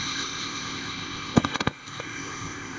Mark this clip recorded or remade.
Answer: remade